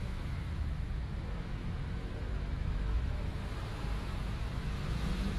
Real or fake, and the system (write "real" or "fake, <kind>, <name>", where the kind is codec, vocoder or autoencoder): fake, autoencoder, DAC-VAE